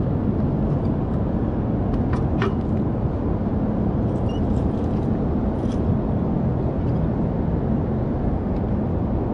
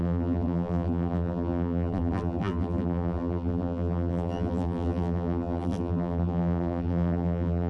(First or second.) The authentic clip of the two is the first